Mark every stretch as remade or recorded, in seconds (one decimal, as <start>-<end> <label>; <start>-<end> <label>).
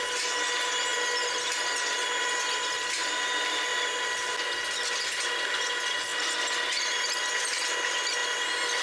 0.0-8.8 recorded